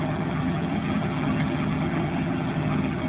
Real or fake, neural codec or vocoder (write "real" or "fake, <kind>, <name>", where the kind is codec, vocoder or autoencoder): fake, vocoder, HiFi-GAN